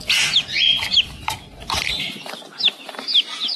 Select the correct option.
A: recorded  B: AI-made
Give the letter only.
A